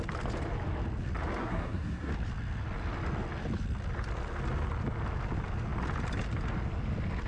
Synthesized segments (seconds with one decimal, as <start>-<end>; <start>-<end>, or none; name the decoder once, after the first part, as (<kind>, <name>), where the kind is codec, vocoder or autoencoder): 1.4-2.1 (codec, SNAC)